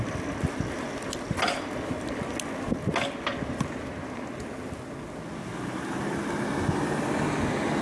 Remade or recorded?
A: recorded